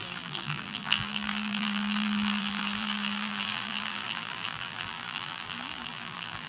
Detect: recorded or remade remade